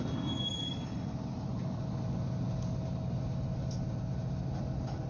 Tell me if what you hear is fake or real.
real